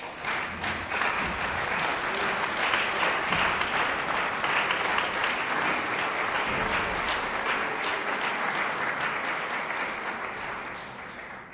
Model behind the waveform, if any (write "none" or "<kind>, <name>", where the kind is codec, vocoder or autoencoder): none